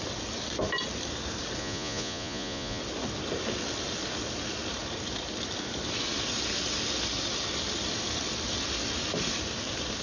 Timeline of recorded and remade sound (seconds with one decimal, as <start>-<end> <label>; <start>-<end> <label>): 0.0-1.6 recorded; 1.6-2.8 remade; 2.8-10.0 recorded